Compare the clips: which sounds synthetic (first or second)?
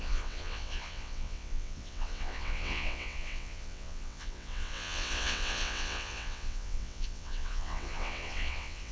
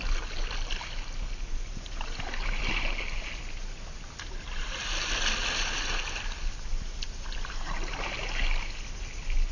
first